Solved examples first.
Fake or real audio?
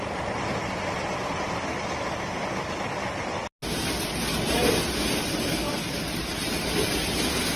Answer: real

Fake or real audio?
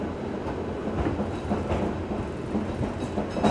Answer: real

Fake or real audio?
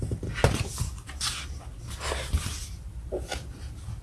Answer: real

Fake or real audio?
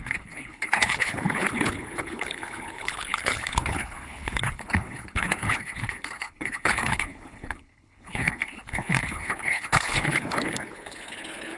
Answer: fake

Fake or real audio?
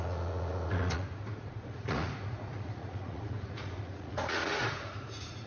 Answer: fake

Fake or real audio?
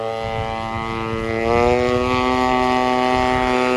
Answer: real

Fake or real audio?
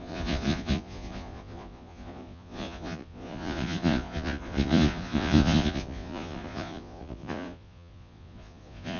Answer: fake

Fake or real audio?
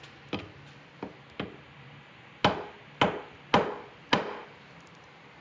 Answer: real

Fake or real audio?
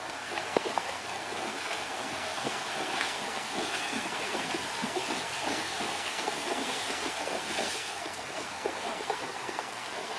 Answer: fake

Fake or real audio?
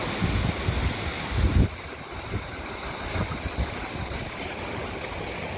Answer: real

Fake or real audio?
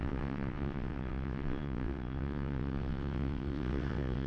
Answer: fake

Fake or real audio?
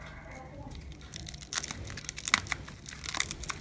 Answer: real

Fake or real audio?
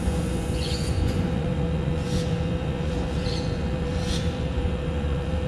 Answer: fake